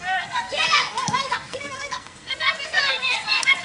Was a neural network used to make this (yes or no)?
yes